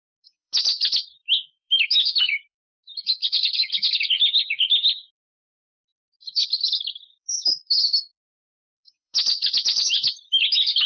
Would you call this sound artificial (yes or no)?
yes